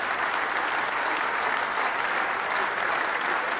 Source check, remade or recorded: recorded